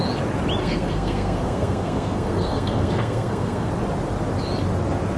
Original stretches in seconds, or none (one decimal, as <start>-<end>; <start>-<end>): 0.0-0.6; 3.7-5.2